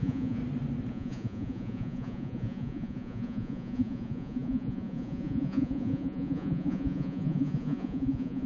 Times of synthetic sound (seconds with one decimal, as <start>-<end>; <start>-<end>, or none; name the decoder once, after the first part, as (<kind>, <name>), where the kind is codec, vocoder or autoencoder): 0.0-0.4 (vocoder, Vocos); 0.9-8.5